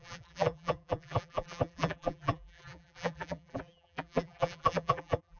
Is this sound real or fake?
fake